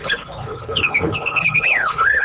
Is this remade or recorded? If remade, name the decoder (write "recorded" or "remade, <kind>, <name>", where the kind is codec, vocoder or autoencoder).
remade, codec, HILCodec